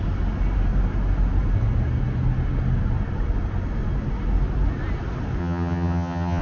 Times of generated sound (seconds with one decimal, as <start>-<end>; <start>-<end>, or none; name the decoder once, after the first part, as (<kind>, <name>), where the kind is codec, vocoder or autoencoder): 5.4-6.4 (vocoder, HiFi-GAN)